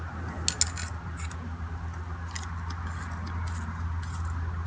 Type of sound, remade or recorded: recorded